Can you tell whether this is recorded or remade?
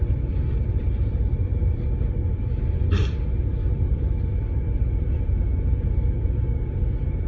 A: remade